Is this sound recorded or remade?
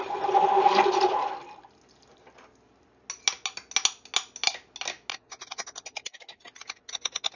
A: recorded